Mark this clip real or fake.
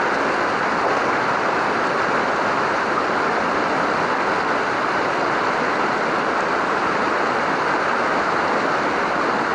real